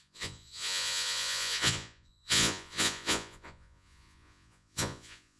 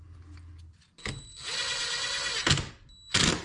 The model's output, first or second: first